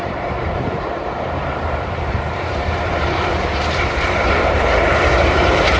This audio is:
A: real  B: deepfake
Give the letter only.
B